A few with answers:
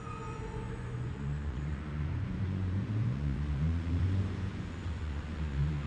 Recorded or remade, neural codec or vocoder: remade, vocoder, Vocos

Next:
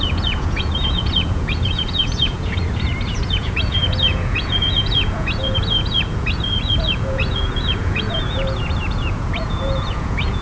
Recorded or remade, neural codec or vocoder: remade, vocoder, Vocos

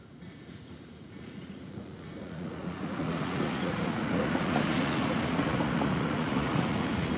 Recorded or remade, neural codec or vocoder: remade, vocoder, Vocos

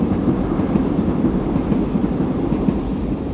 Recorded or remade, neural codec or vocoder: recorded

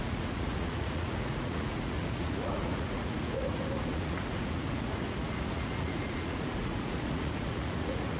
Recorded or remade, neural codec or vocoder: remade, vocoder, Vocos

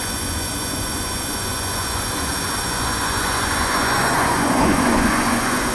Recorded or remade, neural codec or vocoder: remade, vocoder, Vocos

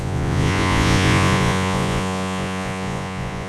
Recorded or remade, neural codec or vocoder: remade, vocoder, Vocos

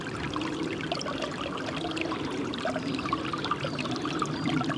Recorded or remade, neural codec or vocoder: recorded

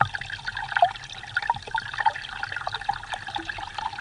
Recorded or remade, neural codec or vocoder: recorded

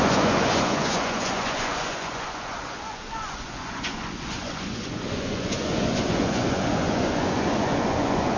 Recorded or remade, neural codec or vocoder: remade, vocoder, Vocos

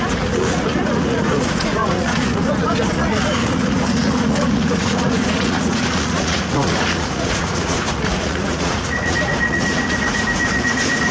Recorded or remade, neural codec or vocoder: remade, vocoder, Vocos